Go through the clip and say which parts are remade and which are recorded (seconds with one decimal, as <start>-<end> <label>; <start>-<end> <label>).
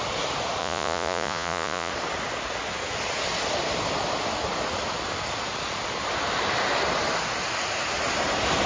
0.0-0.6 recorded; 0.6-1.9 remade; 1.9-8.7 recorded